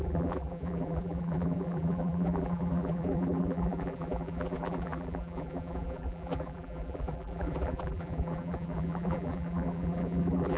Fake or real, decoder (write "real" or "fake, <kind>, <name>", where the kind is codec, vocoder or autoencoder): fake, vocoder, BigVGAN v2